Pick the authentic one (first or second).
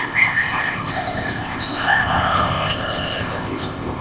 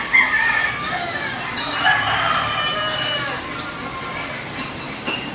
second